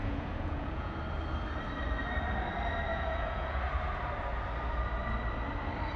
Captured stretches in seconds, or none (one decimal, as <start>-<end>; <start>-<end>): 0.9-2.9; 3.6-6.0